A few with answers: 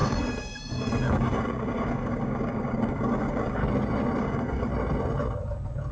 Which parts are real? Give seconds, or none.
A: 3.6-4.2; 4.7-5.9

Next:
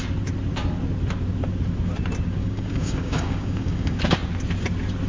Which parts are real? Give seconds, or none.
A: 0.0-2.4; 4.0-5.1